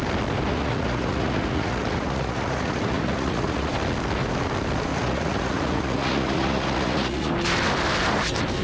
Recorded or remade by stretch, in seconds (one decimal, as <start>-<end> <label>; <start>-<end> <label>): 0.0-0.5 recorded; 0.5-3.7 remade; 3.7-4.9 recorded; 4.9-7.3 remade; 7.3-8.6 recorded